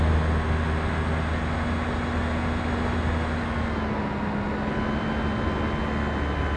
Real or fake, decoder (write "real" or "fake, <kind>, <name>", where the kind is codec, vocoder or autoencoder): real